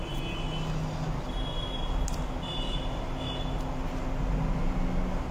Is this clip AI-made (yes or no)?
no